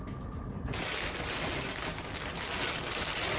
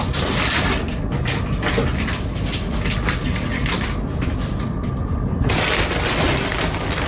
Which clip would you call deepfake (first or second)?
second